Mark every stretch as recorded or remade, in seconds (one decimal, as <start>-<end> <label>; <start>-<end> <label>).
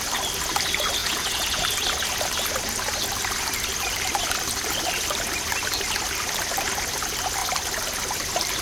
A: 0.0-1.0 recorded; 1.0-1.6 remade; 1.6-8.6 recorded